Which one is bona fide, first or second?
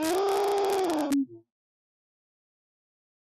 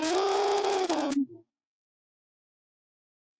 first